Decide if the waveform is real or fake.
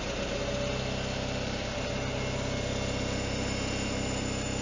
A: real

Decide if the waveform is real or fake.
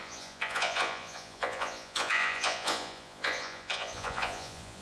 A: fake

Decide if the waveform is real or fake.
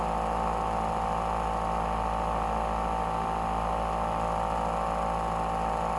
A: real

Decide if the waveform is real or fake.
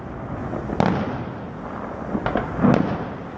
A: real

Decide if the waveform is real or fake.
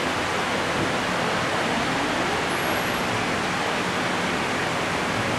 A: real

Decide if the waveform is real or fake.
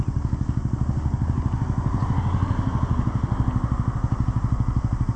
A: real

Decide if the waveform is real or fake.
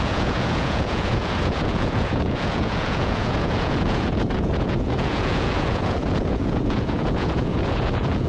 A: fake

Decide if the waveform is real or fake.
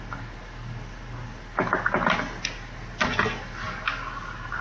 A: real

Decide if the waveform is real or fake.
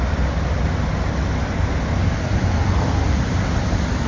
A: real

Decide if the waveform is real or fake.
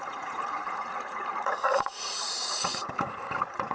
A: fake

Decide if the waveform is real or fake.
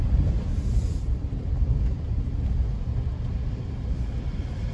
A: fake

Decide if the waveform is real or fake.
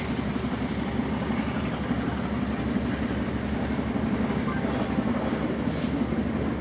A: real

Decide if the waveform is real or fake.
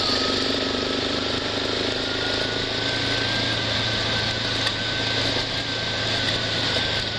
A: real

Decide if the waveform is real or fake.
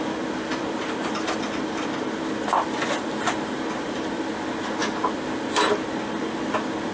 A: fake